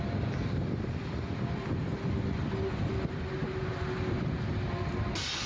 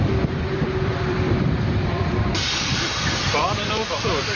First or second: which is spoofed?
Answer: second